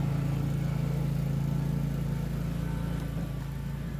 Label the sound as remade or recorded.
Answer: recorded